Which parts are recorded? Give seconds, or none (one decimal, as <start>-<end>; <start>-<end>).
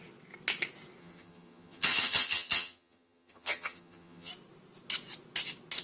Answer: 0.0-1.0; 4.3-5.8